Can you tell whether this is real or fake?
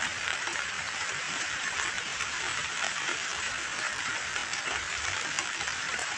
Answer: fake